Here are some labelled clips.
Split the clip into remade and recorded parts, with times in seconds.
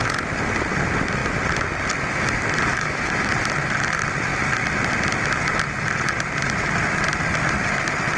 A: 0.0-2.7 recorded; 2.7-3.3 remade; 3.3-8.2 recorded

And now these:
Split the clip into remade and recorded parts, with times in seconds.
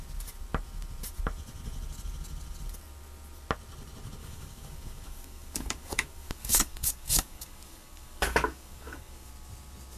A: 0.0-4.2 recorded; 4.2-9.3 remade; 9.3-10.0 recorded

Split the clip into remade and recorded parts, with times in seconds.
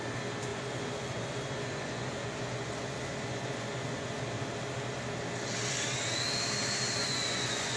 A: 0.0-0.5 recorded; 0.5-4.2 remade; 4.2-7.0 recorded; 7.0-7.8 remade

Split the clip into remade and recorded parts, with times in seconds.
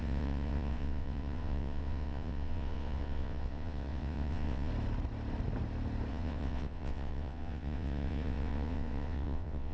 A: 0.0-4.7 remade; 4.7-6.1 recorded; 6.1-9.7 remade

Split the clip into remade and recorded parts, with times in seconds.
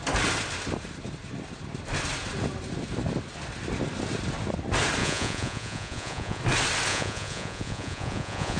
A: 0.0-5.0 recorded; 5.0-6.4 remade; 6.4-6.9 recorded; 6.9-8.6 remade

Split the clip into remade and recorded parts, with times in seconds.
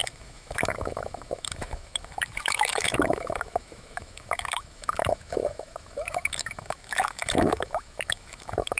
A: 0.0-8.8 remade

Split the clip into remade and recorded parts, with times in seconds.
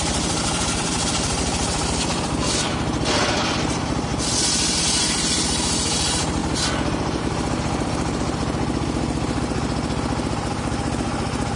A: 0.0-4.1 remade; 4.1-4.8 recorded; 4.8-11.6 remade